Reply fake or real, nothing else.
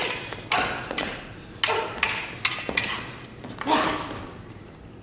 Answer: real